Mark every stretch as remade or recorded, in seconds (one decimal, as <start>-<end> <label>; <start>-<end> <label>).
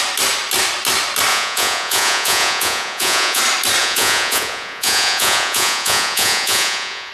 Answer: 0.0-1.3 recorded; 1.3-3.4 remade; 3.4-3.8 recorded; 3.8-7.1 remade